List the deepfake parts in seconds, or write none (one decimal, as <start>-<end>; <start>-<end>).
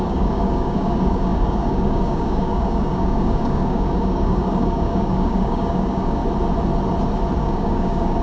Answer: 0.0-6.2; 7.4-8.2